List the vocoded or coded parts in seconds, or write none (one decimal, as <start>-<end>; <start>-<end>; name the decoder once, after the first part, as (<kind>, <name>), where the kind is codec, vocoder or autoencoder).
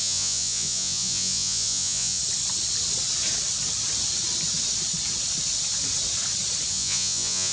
0.0-2.2 (vocoder, Vocos); 6.7-7.5